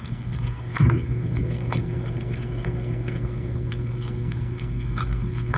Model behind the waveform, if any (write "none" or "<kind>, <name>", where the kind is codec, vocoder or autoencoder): codec, SNAC